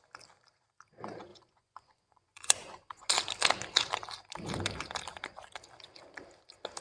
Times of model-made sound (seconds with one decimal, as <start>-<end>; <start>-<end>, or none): 1.3-3.1